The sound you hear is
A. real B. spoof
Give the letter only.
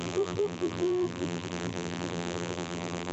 B